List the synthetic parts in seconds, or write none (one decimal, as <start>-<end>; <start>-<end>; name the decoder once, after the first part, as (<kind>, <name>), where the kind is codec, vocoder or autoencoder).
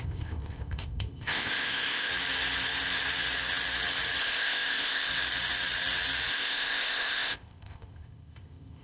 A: 0.0-2.1 (codec, ZipCodec); 4.2-5.1; 6.3-8.8